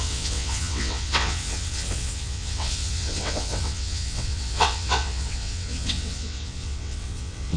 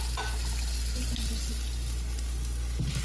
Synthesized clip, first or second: first